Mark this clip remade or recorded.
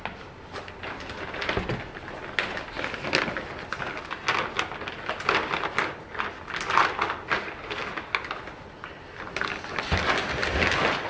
recorded